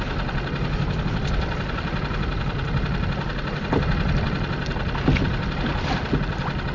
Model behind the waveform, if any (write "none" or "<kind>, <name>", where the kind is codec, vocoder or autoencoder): none